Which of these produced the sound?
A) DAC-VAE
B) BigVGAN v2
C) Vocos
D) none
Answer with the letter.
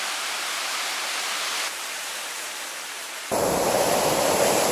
B